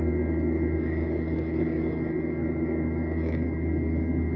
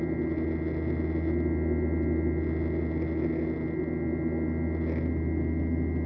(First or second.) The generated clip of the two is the first